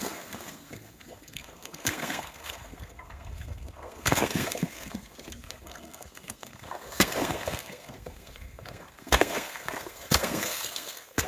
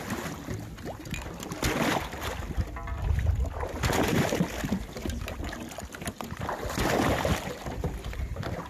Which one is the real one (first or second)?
second